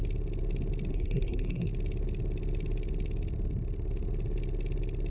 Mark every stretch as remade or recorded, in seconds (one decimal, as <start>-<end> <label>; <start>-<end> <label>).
0.0-0.9 recorded; 0.9-1.7 remade; 1.7-5.1 recorded